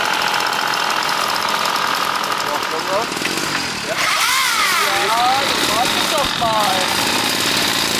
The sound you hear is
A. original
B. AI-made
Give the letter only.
A